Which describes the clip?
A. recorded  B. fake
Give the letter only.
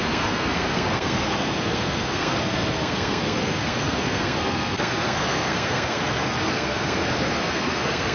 B